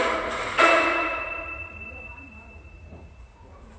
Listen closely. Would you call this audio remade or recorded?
remade